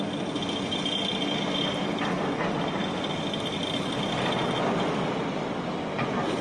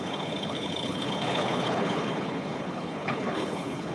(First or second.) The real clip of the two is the first